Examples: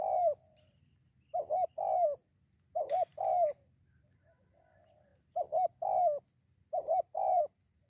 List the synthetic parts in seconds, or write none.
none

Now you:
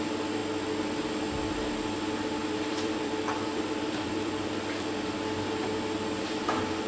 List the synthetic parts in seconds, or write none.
2.4-5.1 (vocoder, BigVGAN v2)

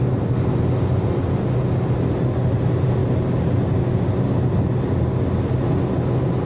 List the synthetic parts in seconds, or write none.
none